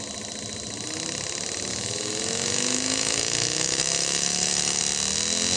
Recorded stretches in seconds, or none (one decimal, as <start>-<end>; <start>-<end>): 0.0-1.7; 4.8-5.6